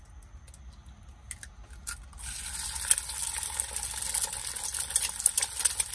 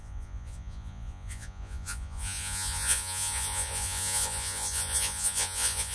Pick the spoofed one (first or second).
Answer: second